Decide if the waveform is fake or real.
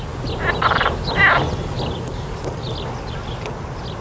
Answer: real